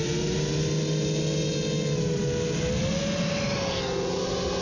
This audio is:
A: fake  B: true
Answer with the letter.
B